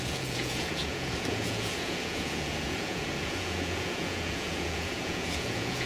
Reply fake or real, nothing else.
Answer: fake